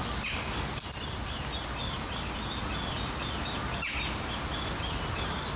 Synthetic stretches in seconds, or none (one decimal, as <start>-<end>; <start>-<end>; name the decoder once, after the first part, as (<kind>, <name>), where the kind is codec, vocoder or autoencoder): none